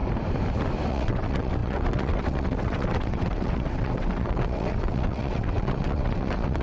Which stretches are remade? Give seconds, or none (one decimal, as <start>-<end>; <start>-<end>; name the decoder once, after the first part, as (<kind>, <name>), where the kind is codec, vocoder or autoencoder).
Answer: 0.9-6.6 (vocoder, WaveNeXt)